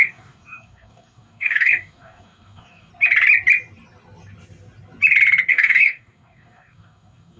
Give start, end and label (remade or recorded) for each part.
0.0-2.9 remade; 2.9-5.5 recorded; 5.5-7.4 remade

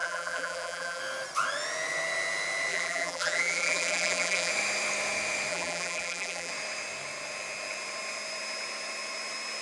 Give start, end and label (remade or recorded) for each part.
0.0-1.0 remade; 1.0-2.7 recorded; 2.7-4.5 remade; 4.5-5.5 recorded; 5.5-6.5 remade; 6.5-9.6 recorded

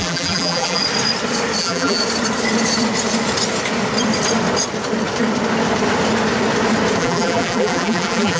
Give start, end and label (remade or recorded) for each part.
0.0-0.8 remade; 0.8-1.6 recorded; 1.6-2.0 remade; 2.0-7.0 recorded; 7.0-8.4 remade

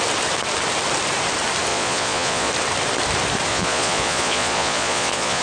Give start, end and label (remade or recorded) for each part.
0.0-1.7 recorded; 1.7-2.5 remade; 2.5-3.5 recorded; 3.5-5.4 remade

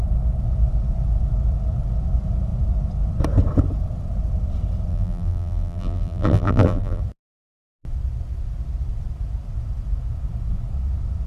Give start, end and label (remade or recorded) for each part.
0.0-4.9 recorded; 4.9-7.0 remade; 7.0-11.3 recorded

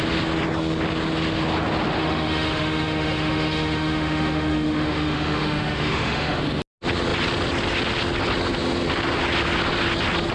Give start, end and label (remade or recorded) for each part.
0.0-2.0 recorded; 2.0-6.4 remade; 6.4-10.3 recorded